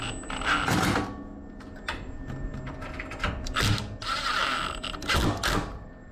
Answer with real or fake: real